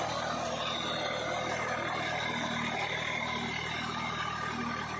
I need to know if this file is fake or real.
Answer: real